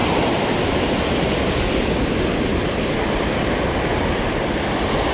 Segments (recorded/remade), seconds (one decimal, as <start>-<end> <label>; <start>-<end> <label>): 0.0-5.1 recorded